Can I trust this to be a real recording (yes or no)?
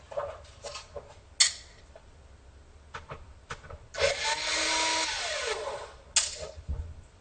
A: yes